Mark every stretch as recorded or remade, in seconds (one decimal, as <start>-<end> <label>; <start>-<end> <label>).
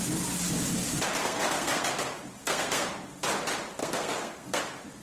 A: 0.0-1.2 recorded; 1.2-1.9 remade; 1.9-2.4 recorded; 2.4-2.9 remade; 2.9-3.8 recorded; 3.8-4.6 remade; 4.6-5.0 recorded